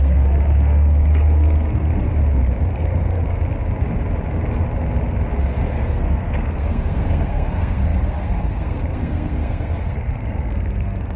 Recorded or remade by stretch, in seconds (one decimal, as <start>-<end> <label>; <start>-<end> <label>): 0.0-2.1 remade; 2.1-2.6 recorded; 2.6-3.4 remade; 3.4-5.7 recorded; 5.7-11.2 remade